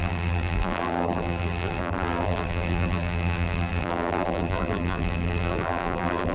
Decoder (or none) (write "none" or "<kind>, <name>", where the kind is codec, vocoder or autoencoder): vocoder, BigVGAN v2